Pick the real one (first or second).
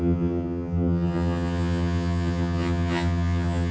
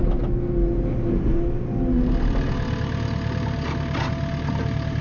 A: second